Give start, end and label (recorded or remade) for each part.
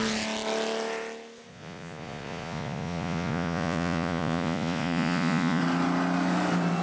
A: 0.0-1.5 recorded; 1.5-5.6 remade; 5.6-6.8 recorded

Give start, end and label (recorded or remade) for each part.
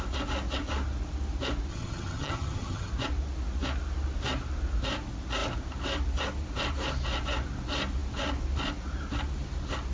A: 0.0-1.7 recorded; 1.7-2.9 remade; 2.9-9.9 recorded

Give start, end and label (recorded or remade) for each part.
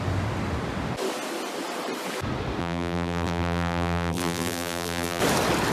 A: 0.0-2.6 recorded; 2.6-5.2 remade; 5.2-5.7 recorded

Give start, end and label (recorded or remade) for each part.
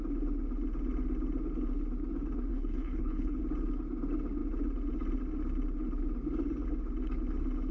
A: 0.0-2.5 recorded; 2.5-3.4 remade; 3.4-7.7 recorded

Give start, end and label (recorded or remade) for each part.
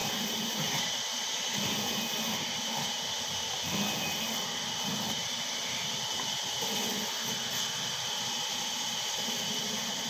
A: 0.0-10.1 recorded